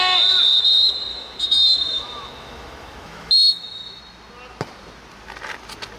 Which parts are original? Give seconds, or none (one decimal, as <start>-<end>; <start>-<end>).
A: 0.0-1.1; 4.0-6.0